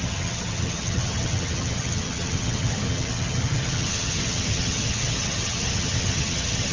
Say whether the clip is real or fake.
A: fake